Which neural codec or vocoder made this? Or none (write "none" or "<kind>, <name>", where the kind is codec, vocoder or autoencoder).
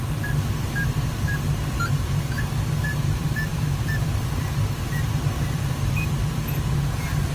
vocoder, BigVGAN v2